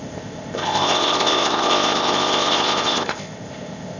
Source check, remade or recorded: remade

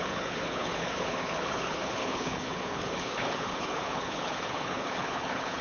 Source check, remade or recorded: remade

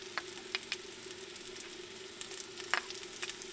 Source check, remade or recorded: recorded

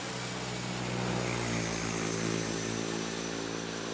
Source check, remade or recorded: recorded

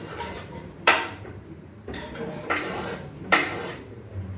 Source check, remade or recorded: remade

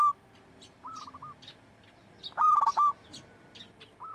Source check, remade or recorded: recorded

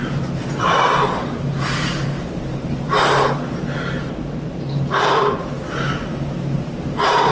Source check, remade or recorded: remade